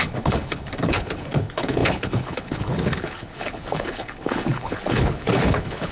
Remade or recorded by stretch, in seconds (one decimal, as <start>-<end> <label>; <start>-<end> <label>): 0.0-5.9 remade